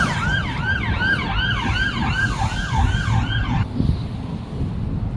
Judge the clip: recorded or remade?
recorded